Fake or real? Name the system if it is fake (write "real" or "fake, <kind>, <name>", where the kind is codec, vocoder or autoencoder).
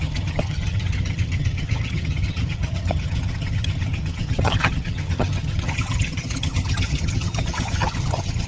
fake, vocoder, HiFi-GAN